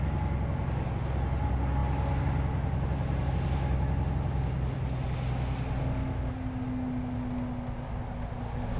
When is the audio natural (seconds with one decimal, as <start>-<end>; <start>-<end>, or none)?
0.0-5.8; 6.3-8.8